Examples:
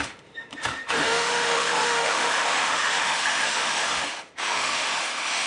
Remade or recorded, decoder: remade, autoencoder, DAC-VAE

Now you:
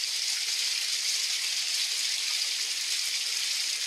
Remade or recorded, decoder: recorded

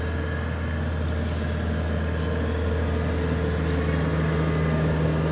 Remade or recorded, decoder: recorded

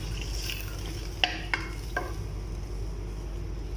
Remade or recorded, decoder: recorded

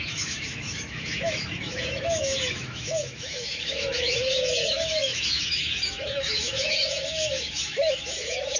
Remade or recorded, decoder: remade, autoencoder, DAC-VAE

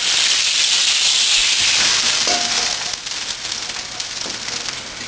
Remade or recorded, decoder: recorded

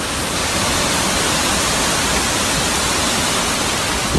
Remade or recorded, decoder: recorded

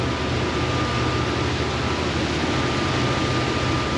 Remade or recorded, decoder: recorded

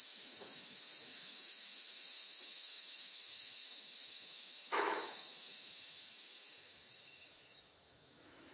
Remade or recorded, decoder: remade, autoencoder, DAC-VAE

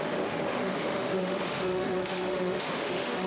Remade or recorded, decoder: remade, autoencoder, DAC-VAE